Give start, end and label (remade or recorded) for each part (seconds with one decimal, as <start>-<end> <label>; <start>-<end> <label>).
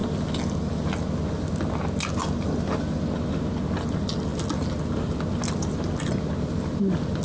0.0-7.2 recorded